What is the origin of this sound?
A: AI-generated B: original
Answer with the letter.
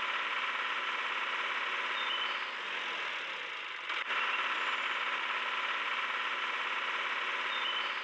B